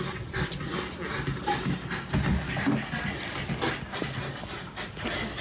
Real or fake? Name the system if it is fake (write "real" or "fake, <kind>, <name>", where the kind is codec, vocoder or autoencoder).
real